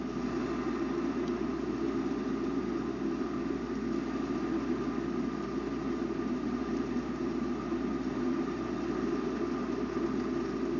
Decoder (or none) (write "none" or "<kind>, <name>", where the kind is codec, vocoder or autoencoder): none